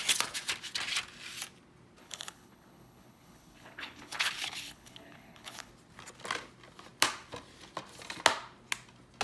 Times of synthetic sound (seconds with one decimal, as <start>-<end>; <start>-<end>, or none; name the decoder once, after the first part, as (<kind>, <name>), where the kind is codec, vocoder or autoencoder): 2.0-5.7 (codec, HILCodec)